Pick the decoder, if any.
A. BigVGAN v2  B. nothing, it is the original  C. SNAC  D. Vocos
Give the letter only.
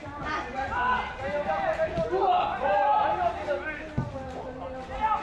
B